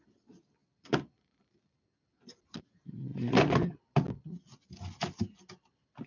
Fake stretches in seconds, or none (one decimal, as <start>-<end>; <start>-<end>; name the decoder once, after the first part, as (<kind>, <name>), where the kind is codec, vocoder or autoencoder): none